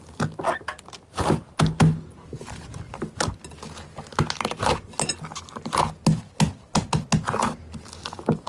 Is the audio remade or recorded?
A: recorded